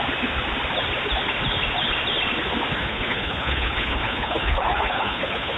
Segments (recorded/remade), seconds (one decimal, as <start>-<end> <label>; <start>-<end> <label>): 0.0-2.7 recorded; 2.7-5.6 remade